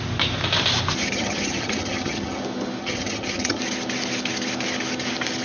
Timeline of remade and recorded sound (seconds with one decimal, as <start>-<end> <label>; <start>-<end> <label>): 0.0-1.0 recorded; 1.0-2.4 remade; 2.4-2.8 recorded; 2.8-3.6 remade; 3.6-5.4 recorded